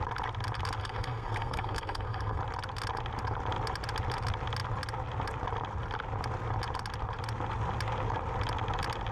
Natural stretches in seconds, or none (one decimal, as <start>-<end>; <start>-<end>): 0.0-0.8; 2.4-9.1